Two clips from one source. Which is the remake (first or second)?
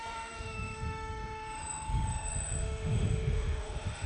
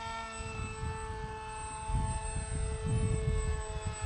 first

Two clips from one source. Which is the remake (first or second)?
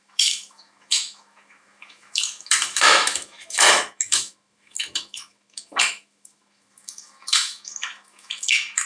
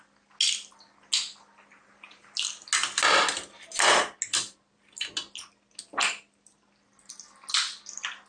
first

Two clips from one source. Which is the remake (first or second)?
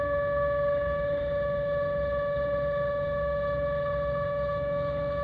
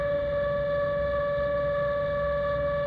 first